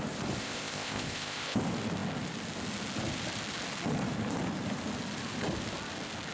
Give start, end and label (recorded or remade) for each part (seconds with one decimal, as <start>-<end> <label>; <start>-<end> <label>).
0.0-0.4 recorded; 0.4-1.6 remade; 1.6-6.3 recorded